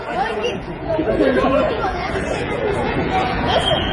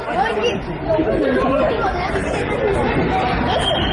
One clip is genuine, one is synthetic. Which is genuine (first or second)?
second